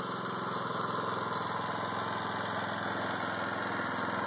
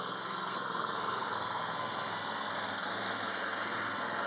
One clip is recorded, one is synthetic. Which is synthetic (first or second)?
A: second